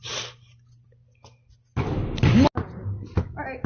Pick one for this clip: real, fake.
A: real